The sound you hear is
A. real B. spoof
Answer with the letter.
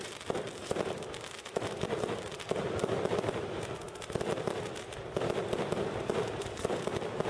A